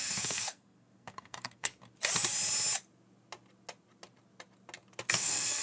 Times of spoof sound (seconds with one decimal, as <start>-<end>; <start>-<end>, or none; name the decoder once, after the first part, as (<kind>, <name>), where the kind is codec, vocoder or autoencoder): 0.0-1.7 (codec, SNAC); 5.1-5.6